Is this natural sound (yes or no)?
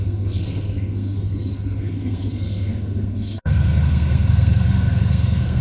no